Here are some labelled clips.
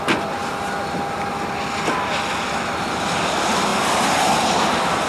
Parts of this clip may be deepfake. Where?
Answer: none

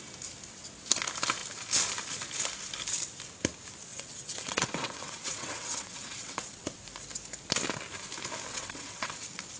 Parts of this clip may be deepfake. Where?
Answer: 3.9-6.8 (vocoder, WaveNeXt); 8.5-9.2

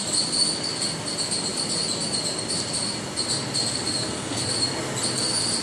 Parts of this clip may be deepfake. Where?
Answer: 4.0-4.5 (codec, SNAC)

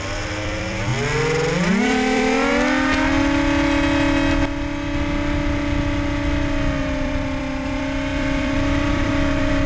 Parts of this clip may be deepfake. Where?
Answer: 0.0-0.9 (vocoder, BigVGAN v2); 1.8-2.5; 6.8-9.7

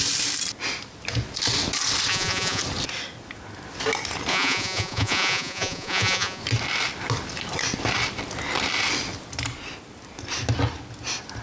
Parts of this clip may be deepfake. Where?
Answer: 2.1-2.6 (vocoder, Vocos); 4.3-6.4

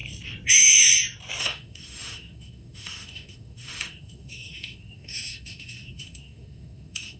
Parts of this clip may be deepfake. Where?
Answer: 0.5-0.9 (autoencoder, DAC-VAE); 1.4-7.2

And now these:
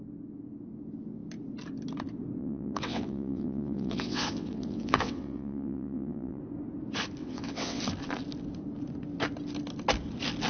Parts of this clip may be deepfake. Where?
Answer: 2.4-6.4 (vocoder, WaveNeXt); 7.2-7.8